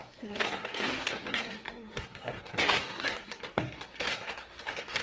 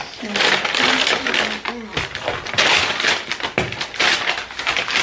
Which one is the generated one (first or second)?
first